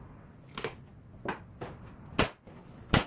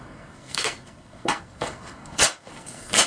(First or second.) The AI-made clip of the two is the second